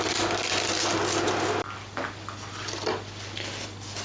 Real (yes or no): yes